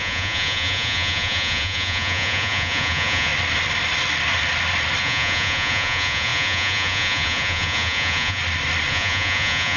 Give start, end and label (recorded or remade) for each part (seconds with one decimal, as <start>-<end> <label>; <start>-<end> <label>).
0.0-3.3 remade; 3.3-5.0 recorded; 5.0-8.4 remade; 8.4-8.9 recorded; 8.9-9.8 remade